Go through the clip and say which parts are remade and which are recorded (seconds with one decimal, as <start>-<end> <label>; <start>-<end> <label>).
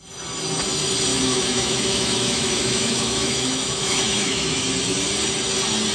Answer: 0.0-1.1 recorded; 1.1-4.6 remade; 4.6-5.9 recorded